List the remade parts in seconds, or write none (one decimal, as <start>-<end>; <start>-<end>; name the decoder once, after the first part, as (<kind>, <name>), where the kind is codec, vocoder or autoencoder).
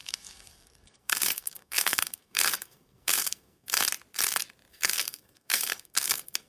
0.0-3.8 (codec, SNAC); 4.7-6.5